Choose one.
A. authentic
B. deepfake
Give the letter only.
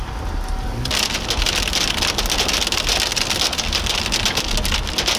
A